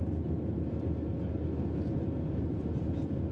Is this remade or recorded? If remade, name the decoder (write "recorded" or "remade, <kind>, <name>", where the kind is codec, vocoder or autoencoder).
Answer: recorded